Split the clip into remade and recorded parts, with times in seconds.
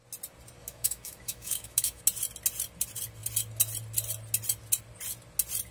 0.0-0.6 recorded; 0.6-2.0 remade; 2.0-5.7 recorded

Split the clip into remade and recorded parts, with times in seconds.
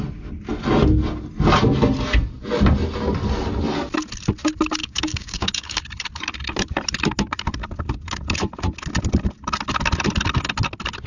0.0-4.8 recorded; 4.8-5.8 remade; 5.8-11.1 recorded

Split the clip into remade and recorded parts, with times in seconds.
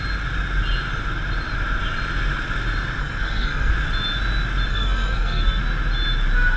0.0-3.0 recorded; 3.0-3.7 remade; 3.7-4.7 recorded; 4.7-5.6 remade; 5.6-6.6 recorded